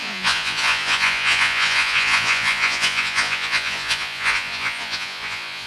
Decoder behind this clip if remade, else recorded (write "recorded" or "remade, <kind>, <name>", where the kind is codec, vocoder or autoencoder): remade, vocoder, Vocos